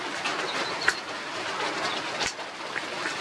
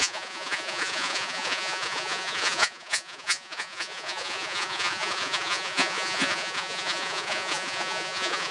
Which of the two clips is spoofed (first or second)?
second